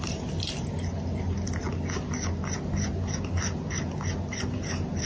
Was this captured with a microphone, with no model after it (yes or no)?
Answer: yes